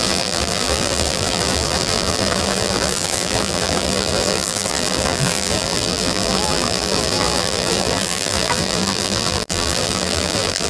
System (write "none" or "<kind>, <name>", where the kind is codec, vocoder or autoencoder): vocoder, BigVGAN v2